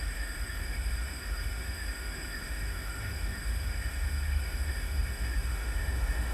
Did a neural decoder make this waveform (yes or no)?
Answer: yes